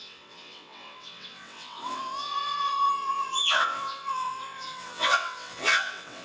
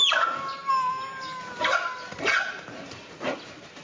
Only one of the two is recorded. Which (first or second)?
second